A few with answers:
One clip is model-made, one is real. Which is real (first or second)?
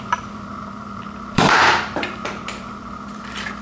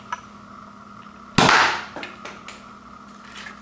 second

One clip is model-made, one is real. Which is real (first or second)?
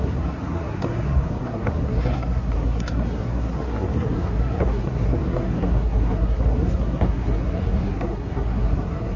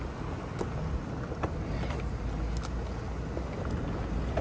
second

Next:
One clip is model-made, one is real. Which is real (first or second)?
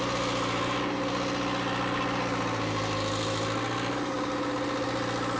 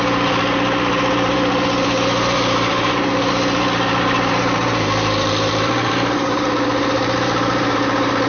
first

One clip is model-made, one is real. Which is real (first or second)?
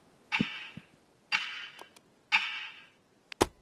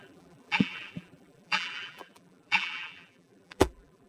first